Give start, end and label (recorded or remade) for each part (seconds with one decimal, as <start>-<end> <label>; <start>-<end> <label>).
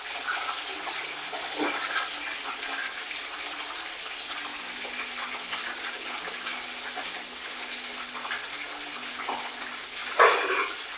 0.0-11.0 recorded